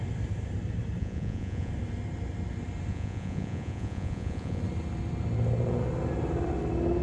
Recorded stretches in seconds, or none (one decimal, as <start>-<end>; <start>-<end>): 0.0-1.0; 1.7-2.9; 4.6-7.0